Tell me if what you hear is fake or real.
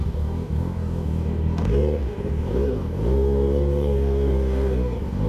fake